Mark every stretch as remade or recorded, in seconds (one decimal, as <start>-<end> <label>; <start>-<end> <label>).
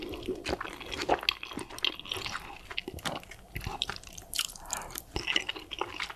0.0-3.7 recorded; 3.7-5.0 remade; 5.0-6.2 recorded